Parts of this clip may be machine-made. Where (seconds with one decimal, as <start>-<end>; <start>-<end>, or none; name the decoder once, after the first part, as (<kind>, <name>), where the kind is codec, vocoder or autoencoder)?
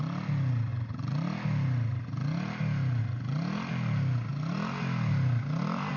none